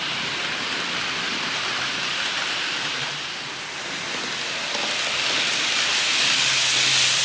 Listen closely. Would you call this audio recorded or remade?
recorded